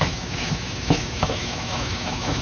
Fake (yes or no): yes